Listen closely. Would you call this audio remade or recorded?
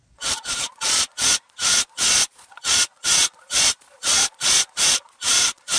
remade